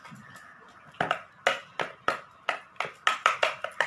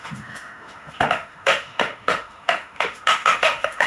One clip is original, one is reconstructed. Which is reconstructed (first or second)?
second